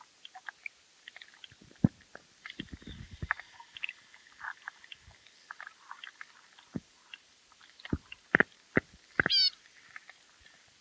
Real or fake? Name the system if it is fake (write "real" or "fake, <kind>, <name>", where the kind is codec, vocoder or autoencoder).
real